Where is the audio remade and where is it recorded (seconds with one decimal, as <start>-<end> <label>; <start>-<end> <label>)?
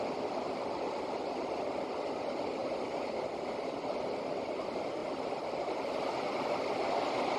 0.0-5.0 recorded; 5.0-5.5 remade; 5.5-7.4 recorded